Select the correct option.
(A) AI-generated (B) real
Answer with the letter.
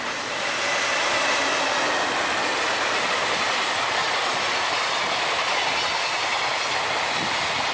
B